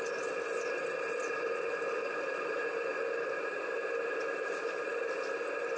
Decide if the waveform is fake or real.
real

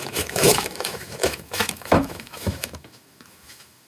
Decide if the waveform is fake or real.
fake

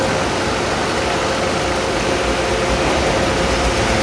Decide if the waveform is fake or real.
real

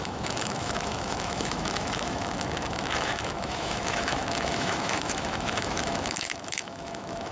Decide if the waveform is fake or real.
fake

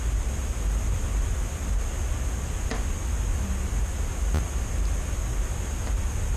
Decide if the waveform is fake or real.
real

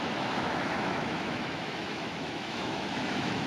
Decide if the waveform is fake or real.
fake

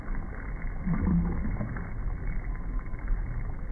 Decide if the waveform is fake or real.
real